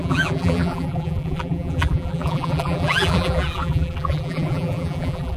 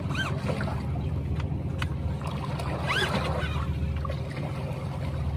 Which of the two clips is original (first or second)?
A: second